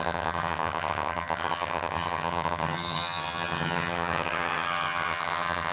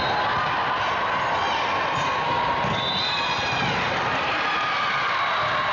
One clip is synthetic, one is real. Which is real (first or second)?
second